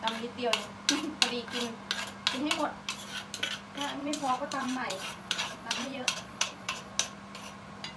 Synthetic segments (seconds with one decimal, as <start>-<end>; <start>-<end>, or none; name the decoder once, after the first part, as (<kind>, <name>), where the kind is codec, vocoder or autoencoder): 4.0-6.9 (vocoder, Vocos)